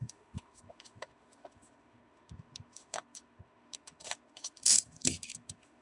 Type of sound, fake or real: fake